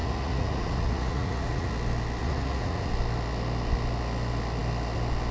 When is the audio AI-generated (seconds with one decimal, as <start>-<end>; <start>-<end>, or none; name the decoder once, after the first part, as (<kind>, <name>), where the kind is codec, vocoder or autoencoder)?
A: 0.0-1.7 (vocoder, Vocos); 2.2-2.9